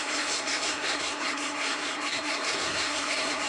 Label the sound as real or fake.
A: fake